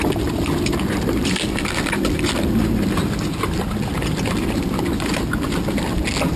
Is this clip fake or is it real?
real